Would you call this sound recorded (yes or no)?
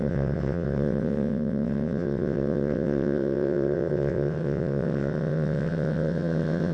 no